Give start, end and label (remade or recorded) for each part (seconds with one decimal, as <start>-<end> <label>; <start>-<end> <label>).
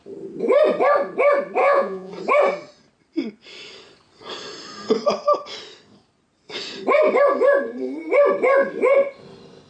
0.0-1.6 recorded; 1.6-2.1 remade; 2.1-9.7 recorded